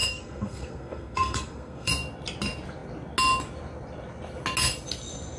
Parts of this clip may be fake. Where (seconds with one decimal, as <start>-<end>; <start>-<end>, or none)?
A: 0.0-1.9